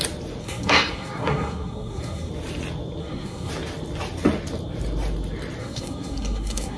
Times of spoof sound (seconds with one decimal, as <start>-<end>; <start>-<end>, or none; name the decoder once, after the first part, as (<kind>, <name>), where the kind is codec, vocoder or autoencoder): 0.4-2.3 (codec, SNAC); 3.0-3.5; 5.6-6.8